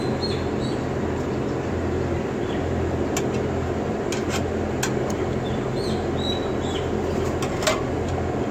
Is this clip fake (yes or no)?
no